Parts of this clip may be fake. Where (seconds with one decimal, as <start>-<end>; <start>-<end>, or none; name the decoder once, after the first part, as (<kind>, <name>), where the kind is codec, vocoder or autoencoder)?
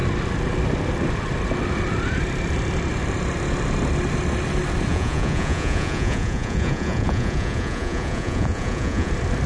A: 4.9-9.1 (vocoder, Vocos)